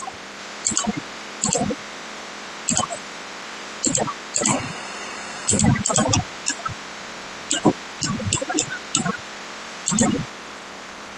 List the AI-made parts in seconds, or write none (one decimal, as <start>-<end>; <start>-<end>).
4.5-5.6